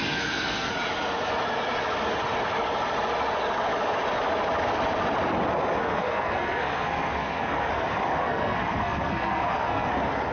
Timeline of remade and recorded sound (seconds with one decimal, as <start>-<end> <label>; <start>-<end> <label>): 0.0-0.7 remade; 0.7-5.8 recorded; 5.8-7.7 remade; 7.7-8.2 recorded; 8.2-9.9 remade; 9.9-10.3 recorded